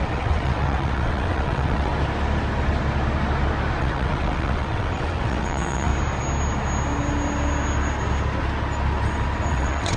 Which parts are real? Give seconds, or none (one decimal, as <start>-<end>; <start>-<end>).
1.9-3.8; 5.9-9.5